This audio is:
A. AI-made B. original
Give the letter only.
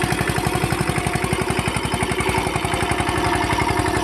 B